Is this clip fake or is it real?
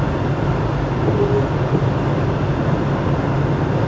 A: real